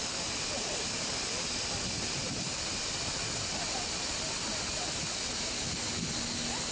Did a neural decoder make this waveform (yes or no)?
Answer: no